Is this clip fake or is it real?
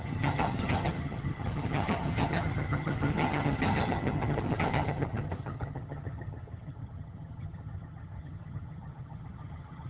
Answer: fake